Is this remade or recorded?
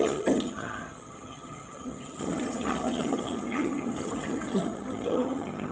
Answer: remade